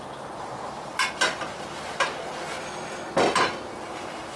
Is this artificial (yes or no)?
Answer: no